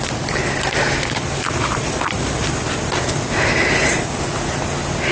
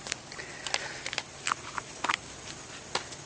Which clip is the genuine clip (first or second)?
first